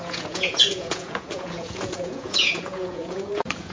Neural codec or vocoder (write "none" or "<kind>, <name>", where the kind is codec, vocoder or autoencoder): vocoder, Vocos